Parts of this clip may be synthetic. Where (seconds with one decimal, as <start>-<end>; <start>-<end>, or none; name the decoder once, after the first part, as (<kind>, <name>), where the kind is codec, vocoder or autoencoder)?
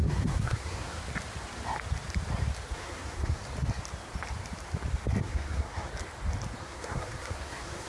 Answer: 0.0-1.0 (codec, SNAC); 2.7-3.4; 5.2-5.9; 6.6-7.9